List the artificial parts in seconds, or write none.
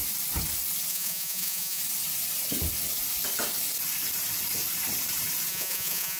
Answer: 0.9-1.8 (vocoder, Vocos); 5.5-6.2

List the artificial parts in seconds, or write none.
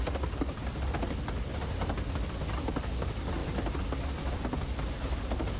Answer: none